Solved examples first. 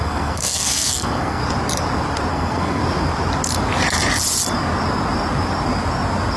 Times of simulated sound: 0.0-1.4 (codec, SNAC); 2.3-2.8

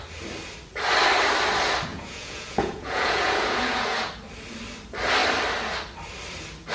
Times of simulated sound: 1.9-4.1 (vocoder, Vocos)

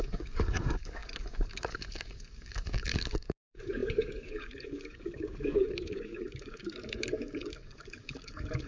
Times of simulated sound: 0.0-8.7 (codec, DAC)

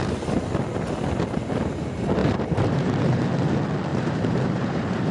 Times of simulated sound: 2.2-3.2 (vocoder, BigVGAN v2); 3.9-5.1